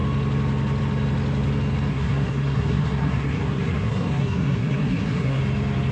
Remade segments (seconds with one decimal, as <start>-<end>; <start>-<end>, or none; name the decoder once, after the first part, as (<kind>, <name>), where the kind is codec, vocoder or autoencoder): 1.9-5.4 (codec, SNAC)